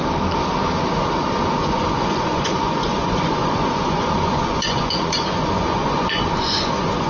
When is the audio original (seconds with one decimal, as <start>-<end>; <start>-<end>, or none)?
0.0-1.6